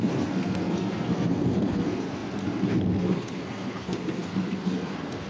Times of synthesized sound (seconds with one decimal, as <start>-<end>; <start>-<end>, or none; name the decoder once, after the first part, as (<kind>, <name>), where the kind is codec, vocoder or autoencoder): 0.0-5.3 (codec, SNAC)